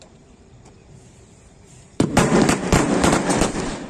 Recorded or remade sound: remade